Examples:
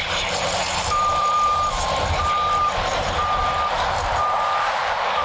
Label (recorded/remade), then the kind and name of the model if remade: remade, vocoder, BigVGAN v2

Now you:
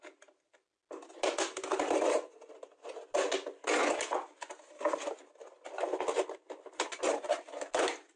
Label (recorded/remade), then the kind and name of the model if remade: recorded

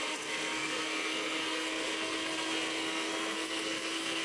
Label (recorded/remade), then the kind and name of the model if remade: remade, codec, SNAC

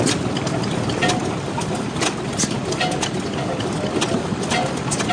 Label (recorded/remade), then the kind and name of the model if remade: recorded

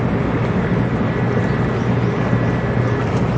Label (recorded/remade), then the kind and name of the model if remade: recorded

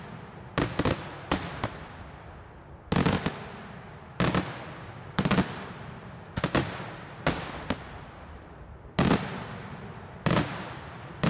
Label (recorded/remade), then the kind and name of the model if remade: recorded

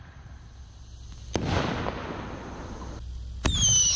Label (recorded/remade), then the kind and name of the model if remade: recorded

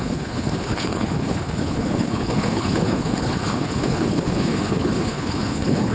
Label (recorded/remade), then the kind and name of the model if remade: remade, codec, HILCodec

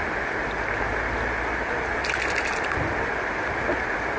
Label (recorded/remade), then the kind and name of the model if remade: recorded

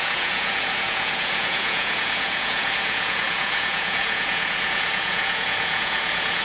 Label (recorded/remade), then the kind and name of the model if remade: remade, vocoder, Vocos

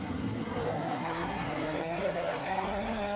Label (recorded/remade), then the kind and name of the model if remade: remade, codec, SNAC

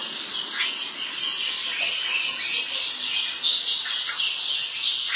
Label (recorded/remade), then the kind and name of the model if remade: recorded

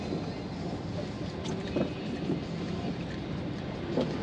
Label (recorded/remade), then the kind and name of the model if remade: recorded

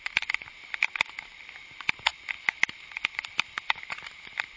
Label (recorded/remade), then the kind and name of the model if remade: recorded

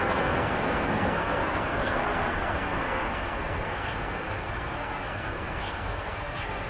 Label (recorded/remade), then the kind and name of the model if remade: remade, codec, SNAC